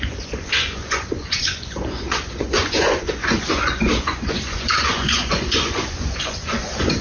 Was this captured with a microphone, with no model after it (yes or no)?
no